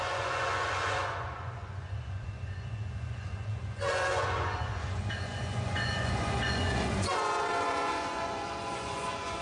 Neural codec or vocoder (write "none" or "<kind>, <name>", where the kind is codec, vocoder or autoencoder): vocoder, Vocos